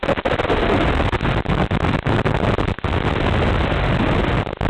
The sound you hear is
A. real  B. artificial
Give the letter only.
A